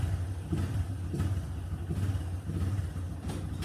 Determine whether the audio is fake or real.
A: real